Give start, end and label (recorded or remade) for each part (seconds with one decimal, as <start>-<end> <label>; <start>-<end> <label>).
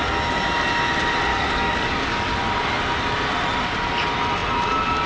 0.0-1.3 recorded; 1.3-2.4 remade; 2.4-5.1 recorded